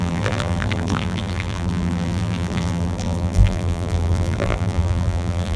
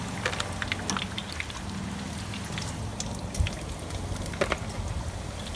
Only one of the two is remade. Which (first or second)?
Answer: first